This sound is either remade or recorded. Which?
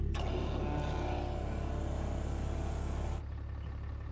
recorded